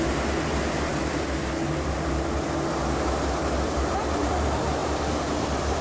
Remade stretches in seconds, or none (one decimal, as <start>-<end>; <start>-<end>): none